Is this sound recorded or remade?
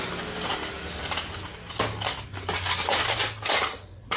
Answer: recorded